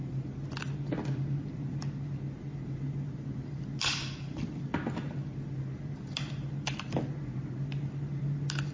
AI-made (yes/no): no